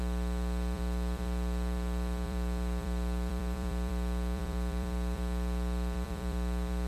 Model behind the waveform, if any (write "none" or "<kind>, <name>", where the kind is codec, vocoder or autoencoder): vocoder, BigVGAN v2